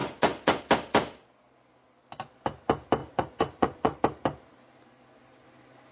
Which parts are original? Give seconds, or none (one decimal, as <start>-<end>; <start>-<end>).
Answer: 0.6-3.0; 4.0-5.9